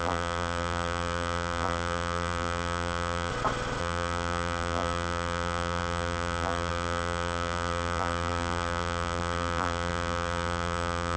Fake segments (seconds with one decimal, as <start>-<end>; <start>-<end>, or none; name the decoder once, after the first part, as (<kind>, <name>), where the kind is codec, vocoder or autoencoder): 0.0-3.3 (vocoder, BigVGAN v2); 3.8-11.2